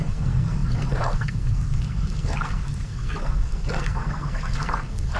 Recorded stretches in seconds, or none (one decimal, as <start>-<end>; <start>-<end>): none